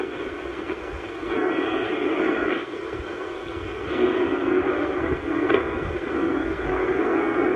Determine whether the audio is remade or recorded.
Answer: remade